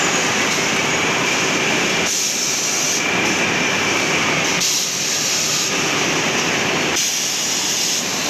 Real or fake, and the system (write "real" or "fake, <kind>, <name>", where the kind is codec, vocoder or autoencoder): real